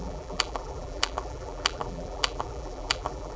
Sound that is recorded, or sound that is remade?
remade